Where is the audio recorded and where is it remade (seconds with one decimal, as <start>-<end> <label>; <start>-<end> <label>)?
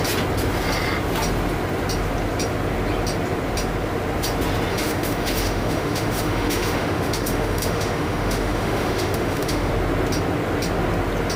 0.0-4.7 recorded; 4.7-9.7 remade; 9.7-11.4 recorded